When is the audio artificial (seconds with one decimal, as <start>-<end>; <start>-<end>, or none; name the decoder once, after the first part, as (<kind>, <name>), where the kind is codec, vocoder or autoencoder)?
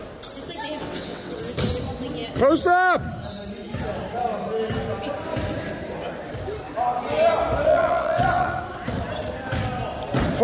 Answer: 0.8-1.4 (vocoder, WaveNeXt); 7.7-8.6